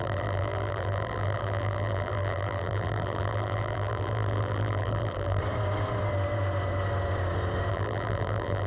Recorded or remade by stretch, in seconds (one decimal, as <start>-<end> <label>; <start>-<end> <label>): 0.0-5.4 remade; 5.4-7.7 recorded; 7.7-8.7 remade